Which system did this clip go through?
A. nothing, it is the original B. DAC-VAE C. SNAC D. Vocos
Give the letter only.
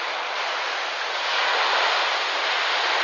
A